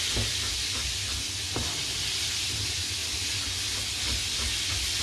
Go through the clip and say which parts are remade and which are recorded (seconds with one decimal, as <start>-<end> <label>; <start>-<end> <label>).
0.0-5.0 recorded